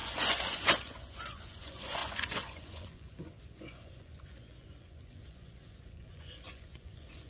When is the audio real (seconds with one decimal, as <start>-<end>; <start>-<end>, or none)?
none